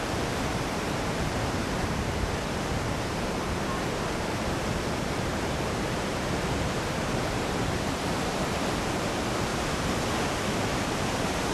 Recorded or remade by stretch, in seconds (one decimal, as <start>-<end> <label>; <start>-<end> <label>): 0.0-9.5 remade; 9.5-10.9 recorded; 10.9-11.5 remade